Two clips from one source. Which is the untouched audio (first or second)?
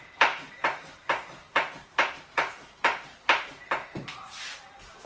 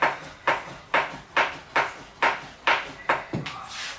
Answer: second